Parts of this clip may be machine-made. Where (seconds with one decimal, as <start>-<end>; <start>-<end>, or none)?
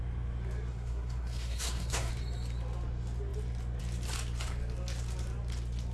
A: 0.7-2.1